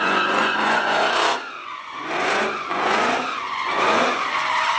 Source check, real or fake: fake